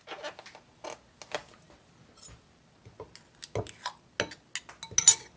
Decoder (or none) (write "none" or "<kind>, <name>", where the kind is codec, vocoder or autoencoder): none